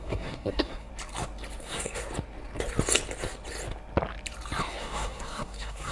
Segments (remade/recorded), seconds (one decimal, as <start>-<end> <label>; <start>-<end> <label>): 0.0-0.9 remade; 0.9-1.6 recorded; 1.6-2.0 remade; 2.0-4.7 recorded; 4.7-5.9 remade